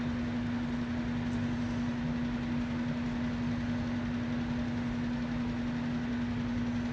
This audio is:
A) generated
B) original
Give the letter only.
B